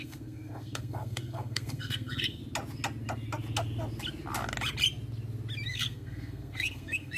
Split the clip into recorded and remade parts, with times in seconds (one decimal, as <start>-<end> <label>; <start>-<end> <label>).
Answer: 0.0-2.4 remade; 2.4-5.7 recorded; 5.7-7.2 remade